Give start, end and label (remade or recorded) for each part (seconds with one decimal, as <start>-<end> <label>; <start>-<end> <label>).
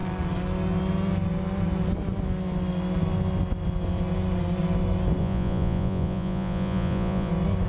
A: 0.0-5.2 recorded; 5.2-7.3 remade; 7.3-7.7 recorded